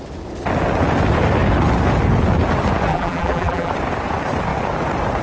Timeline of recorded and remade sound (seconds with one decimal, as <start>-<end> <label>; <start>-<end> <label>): 0.0-2.9 recorded; 2.9-3.7 remade; 3.7-5.2 recorded